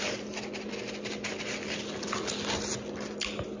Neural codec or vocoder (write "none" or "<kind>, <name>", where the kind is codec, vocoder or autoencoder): none